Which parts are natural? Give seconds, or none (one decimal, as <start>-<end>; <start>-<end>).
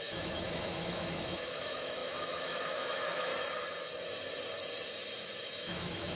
3.3-5.4